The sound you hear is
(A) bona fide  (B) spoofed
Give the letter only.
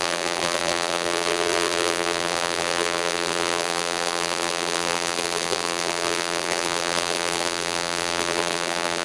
B